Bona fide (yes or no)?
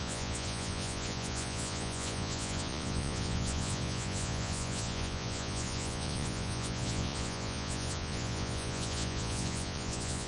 no